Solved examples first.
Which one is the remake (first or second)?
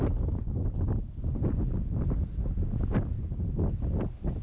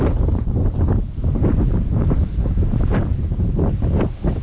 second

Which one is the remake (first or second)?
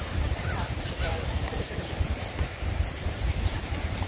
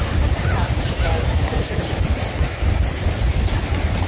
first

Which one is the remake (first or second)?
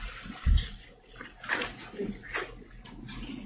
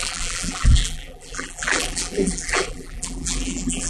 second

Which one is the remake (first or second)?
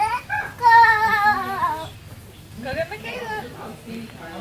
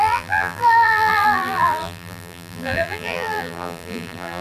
second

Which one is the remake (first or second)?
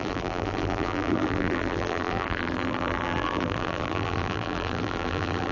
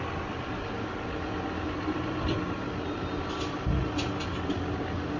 first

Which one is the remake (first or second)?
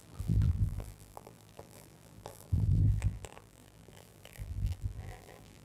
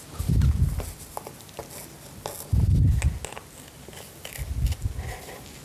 first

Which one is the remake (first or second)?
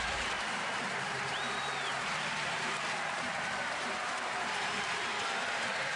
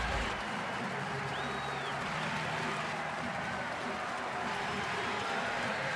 first